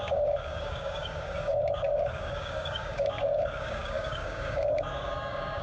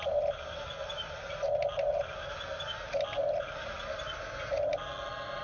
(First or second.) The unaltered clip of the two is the second